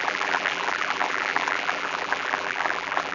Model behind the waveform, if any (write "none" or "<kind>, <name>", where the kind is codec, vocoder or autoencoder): vocoder, BigVGAN v2